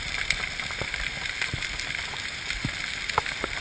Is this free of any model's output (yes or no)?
no